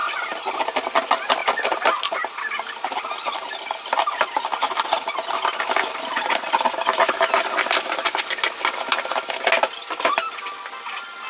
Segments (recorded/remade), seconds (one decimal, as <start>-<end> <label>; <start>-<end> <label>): 0.0-11.3 recorded